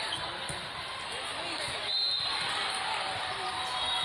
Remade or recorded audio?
recorded